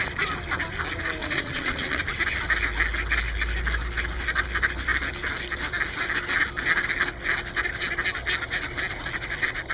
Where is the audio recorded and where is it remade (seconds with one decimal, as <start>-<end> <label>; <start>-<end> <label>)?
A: 0.0-1.2 recorded; 1.2-2.0 remade; 2.0-9.7 recorded